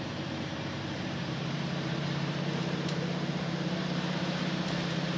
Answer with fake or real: fake